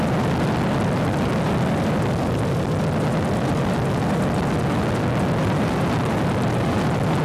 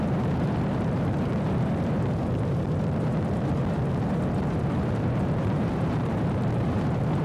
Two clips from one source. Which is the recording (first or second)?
first